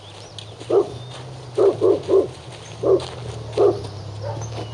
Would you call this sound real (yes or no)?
yes